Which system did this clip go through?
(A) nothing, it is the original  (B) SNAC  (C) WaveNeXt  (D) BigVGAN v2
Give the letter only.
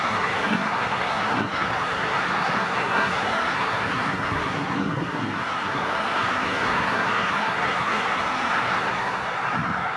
B